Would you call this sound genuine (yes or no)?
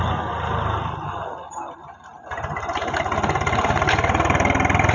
yes